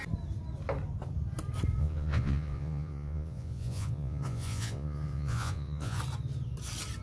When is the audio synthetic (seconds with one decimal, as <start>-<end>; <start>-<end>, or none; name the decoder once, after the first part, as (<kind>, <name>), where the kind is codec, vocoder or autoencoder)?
1.8-6.0 (vocoder, Vocos)